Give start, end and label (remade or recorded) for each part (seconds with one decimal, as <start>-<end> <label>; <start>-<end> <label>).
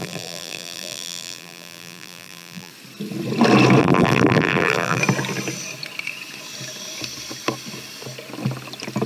0.0-2.7 remade; 2.7-3.8 recorded; 3.8-5.0 remade; 5.0-9.1 recorded